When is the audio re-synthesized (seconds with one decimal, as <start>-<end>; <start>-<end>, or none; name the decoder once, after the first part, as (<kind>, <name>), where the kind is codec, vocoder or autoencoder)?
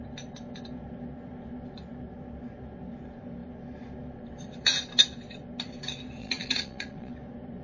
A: 6.2-7.1 (vocoder, Vocos)